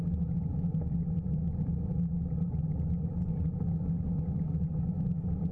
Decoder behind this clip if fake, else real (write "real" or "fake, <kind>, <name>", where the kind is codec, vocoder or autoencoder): real